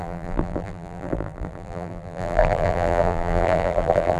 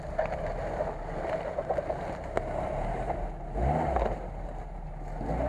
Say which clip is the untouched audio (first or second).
second